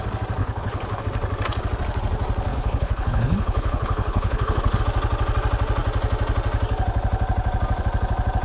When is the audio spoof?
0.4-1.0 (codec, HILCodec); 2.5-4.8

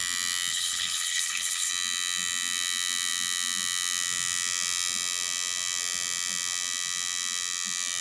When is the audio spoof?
0.5-1.7 (codec, HILCodec)

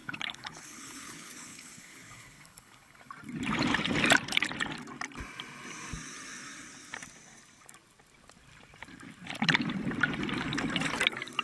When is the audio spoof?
0.0-3.1 (codec, HILCodec)

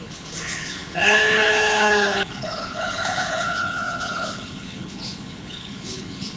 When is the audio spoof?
0.0-6.4 (codec, HILCodec)